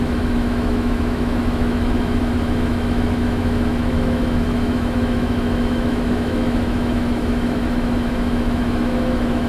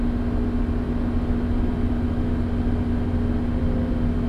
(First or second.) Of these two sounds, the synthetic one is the first